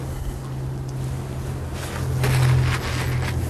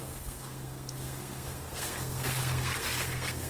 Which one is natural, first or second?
first